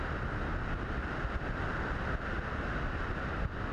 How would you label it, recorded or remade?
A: recorded